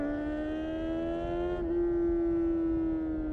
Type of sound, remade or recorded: recorded